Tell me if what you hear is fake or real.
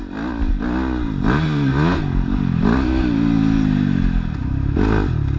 real